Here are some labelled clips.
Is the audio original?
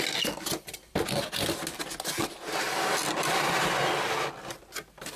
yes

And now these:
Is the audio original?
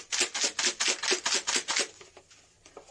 yes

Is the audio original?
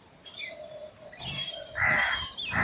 no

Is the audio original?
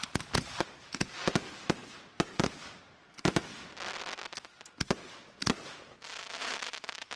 yes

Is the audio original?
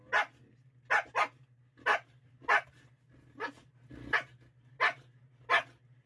yes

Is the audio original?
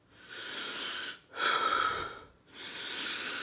yes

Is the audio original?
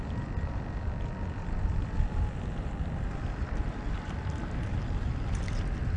no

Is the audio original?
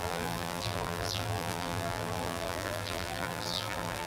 no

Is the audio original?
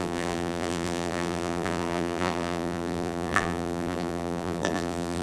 no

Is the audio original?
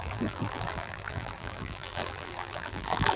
no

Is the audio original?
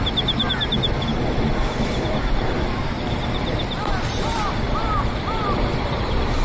no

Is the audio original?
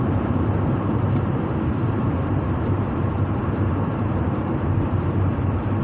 no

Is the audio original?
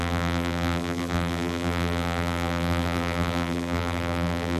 no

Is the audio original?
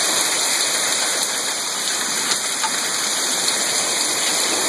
no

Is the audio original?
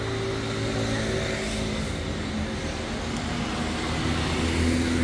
yes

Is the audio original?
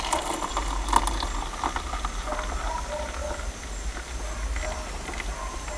yes